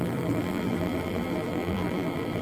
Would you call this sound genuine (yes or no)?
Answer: no